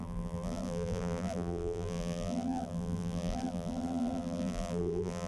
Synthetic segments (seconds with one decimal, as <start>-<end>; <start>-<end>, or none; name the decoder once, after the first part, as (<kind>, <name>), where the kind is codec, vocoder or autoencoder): 0.0-5.3 (vocoder, BigVGAN v2)